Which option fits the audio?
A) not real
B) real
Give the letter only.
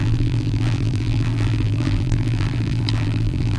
A